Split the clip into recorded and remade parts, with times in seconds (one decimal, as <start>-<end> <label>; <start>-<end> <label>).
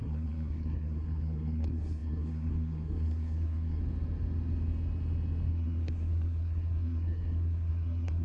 0.0-3.8 remade; 3.8-5.5 recorded; 5.5-8.2 remade